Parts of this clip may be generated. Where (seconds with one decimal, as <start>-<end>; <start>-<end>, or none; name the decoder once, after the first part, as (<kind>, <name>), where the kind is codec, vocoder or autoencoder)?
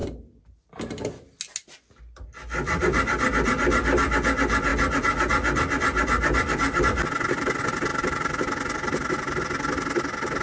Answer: none